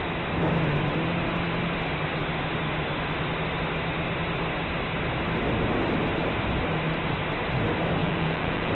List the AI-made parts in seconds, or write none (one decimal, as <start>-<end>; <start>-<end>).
8.0-8.7